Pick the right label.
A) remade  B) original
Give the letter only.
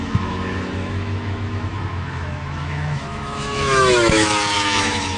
A